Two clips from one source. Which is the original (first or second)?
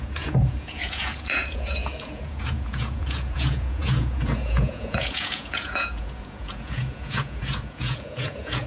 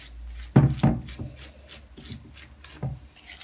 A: second